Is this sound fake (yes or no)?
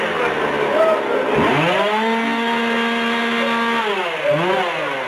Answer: no